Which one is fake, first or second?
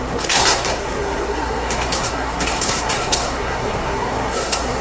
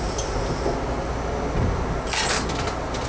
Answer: first